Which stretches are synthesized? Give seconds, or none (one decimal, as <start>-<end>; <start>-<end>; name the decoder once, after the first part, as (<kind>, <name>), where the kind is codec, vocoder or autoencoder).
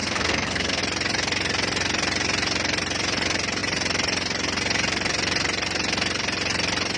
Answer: 0.0-0.8 (codec, SNAC)